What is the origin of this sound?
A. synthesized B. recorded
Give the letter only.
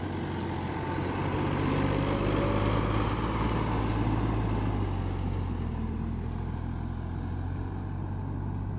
B